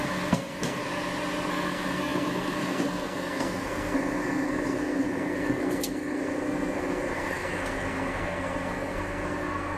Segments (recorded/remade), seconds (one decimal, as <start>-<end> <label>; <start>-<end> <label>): 0.0-0.8 remade; 0.8-1.5 recorded; 1.5-9.8 remade